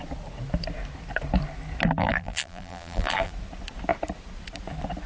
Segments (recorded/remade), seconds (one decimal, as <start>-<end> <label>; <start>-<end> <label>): 0.0-2.0 recorded; 2.0-3.3 remade; 3.3-5.1 recorded